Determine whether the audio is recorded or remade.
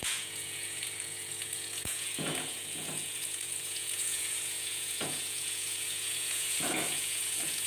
remade